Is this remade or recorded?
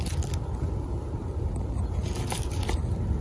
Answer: recorded